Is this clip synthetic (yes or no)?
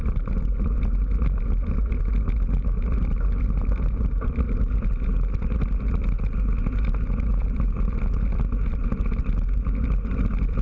no